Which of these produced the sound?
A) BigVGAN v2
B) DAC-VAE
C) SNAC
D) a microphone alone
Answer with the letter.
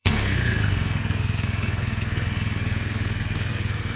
C